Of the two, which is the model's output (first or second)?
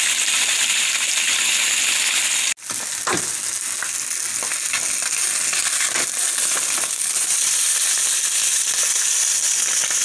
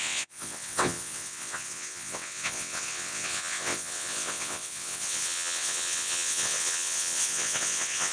second